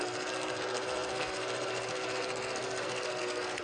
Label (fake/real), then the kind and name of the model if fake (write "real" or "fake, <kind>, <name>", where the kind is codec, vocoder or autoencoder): fake, codec, SNAC